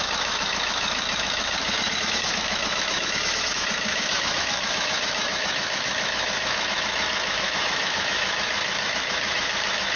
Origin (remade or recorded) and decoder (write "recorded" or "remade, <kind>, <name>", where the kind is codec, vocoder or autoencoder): remade, autoencoder, DAC-VAE